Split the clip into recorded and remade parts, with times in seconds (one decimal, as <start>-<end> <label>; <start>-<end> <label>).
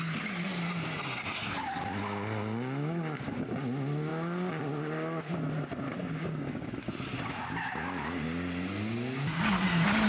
0.0-6.0 recorded; 6.0-6.9 remade; 6.9-10.1 recorded